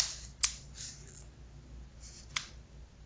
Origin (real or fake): real